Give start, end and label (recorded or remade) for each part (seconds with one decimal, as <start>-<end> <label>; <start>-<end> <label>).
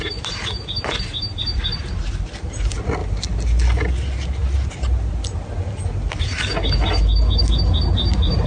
0.0-8.5 recorded